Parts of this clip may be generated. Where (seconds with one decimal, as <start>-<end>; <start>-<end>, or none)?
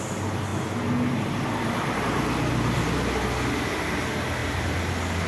none